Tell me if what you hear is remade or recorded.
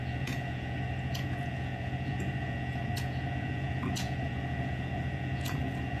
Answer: remade